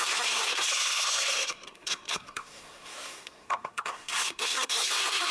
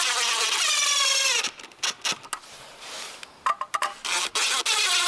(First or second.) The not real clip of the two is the first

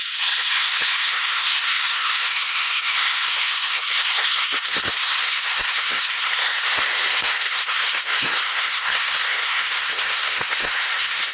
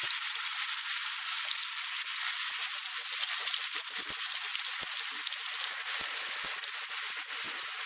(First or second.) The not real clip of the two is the first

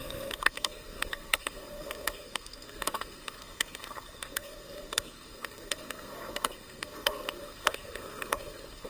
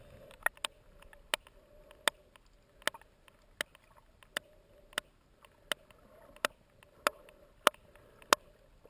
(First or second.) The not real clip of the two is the first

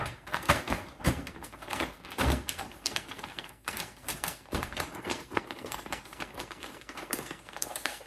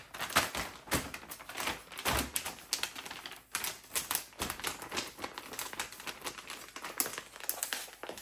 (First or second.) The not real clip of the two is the first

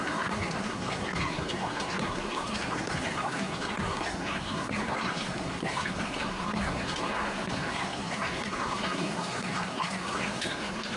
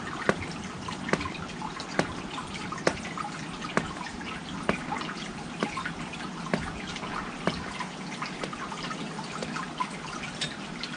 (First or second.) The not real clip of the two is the first